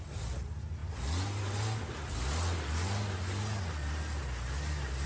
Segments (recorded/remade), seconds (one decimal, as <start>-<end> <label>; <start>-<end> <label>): 0.0-5.1 recorded